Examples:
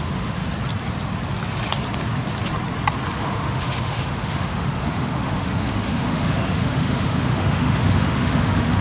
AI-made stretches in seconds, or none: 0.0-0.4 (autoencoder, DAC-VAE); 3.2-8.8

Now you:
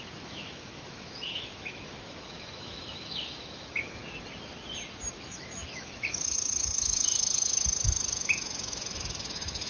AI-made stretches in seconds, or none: 0.0-4.0 (autoencoder, DAC-VAE); 5.1-9.7

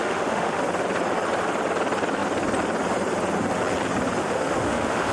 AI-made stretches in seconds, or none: 0.0-0.6 (autoencoder, DAC-VAE); 4.2-5.1

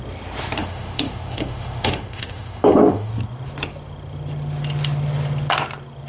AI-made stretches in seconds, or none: 0.6-3.1 (autoencoder, DAC-VAE)

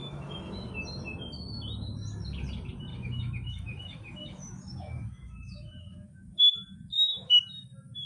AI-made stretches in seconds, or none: 0.0-0.7 (autoencoder, DAC-VAE); 2.9-7.4

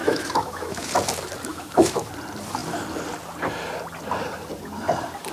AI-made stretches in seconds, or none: 0.0-0.9 (autoencoder, DAC-VAE); 1.5-2.1

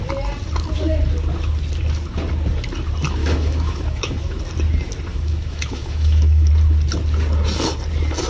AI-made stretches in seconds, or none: 3.2-4.4 (autoencoder, DAC-VAE); 5.1-6.5